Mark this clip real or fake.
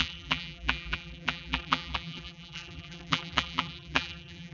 fake